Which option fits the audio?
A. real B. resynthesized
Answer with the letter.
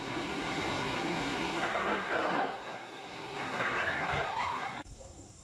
B